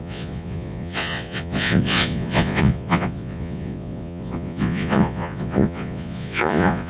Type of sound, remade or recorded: remade